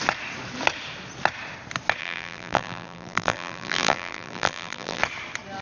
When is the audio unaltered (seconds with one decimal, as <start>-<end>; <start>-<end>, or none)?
0.0-2.0; 5.0-5.6